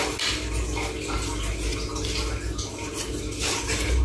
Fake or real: real